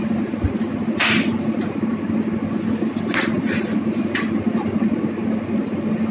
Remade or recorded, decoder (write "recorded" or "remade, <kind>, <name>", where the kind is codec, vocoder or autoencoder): recorded